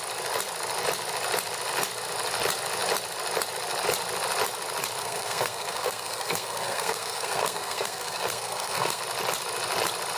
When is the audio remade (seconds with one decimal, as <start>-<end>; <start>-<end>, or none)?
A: 5.0-9.0